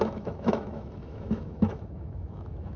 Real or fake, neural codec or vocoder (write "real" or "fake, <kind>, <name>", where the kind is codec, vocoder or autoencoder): fake, autoencoder, DAC-VAE